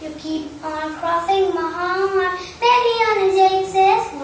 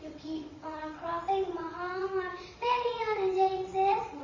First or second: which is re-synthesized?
second